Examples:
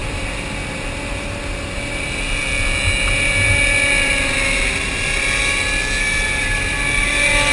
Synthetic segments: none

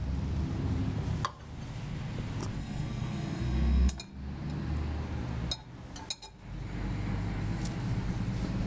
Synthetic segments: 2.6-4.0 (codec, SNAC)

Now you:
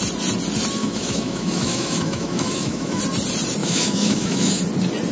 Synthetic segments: 0.8-3.0 (autoencoder, DAC-VAE); 3.6-4.6

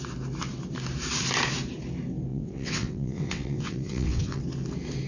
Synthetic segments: 2.3-4.4 (vocoder, WaveNeXt)